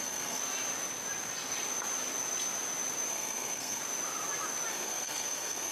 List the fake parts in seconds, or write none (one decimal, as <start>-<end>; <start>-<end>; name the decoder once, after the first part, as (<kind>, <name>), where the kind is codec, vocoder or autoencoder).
0.0-0.4 (codec, SNAC); 3.1-3.8; 4.7-5.7